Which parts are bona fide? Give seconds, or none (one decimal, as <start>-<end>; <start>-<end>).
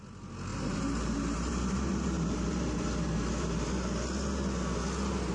0.0-0.5; 3.7-5.3